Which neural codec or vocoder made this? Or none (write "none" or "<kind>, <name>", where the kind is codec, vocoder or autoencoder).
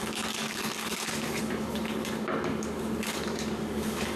codec, DAC